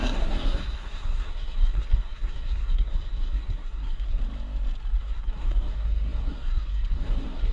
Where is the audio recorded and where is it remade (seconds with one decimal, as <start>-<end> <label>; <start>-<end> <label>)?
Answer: 0.0-4.2 remade; 4.2-5.0 recorded; 5.0-7.5 remade